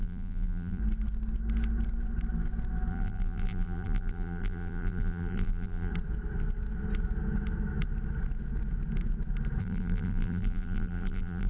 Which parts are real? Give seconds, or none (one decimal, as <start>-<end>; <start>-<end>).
0.8-2.9; 5.9-9.6